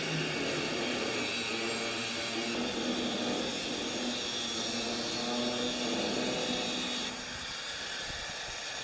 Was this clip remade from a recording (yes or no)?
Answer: no